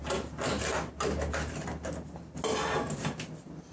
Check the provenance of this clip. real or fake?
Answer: real